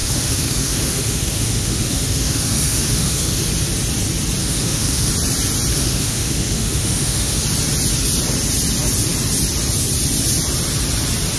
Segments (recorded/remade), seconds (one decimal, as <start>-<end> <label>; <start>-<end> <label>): 0.0-3.5 remade; 3.5-4.4 recorded; 4.4-5.1 remade; 5.1-5.7 recorded; 5.7-7.4 remade; 7.4-11.4 recorded